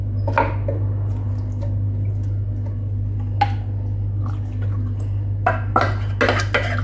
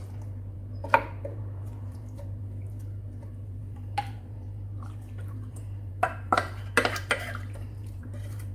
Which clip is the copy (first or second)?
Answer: second